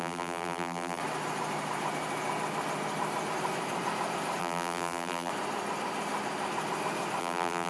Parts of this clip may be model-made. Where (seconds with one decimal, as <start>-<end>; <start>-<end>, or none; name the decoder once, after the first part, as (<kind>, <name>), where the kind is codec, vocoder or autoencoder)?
0.0-1.0 (vocoder, BigVGAN v2); 4.4-5.3; 7.2-7.7